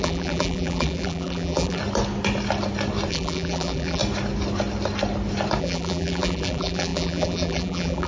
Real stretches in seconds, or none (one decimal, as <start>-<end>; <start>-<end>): 1.8-3.1; 4.0-5.6